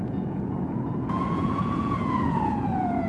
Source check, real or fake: fake